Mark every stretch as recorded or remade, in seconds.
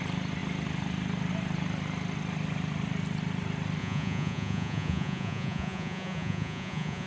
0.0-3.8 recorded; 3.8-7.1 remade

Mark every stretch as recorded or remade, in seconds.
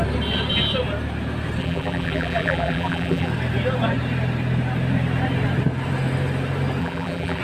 0.0-1.6 recorded; 1.6-3.3 remade; 3.3-6.8 recorded; 6.8-7.4 remade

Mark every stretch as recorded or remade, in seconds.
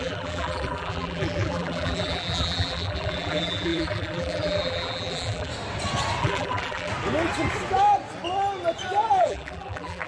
0.0-5.5 remade; 5.5-6.2 recorded; 6.2-6.9 remade; 6.9-9.2 recorded; 9.2-10.1 remade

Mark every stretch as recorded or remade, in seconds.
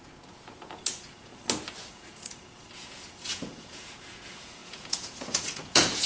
0.0-1.3 remade; 1.3-1.9 recorded; 1.9-6.1 remade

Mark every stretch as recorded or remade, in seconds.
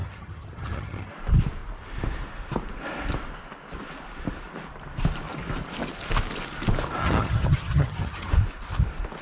0.0-1.1 remade; 1.1-7.0 recorded; 7.0-8.3 remade; 8.3-9.2 recorded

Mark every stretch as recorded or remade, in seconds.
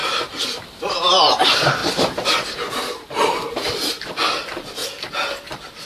0.0-0.8 recorded; 0.8-4.8 remade; 4.8-5.4 recorded; 5.4-5.9 remade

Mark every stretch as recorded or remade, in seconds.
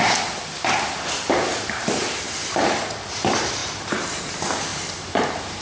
0.0-1.5 recorded; 1.5-2.2 remade; 2.2-3.6 recorded; 3.6-4.3 remade; 4.3-4.7 recorded; 4.7-5.6 remade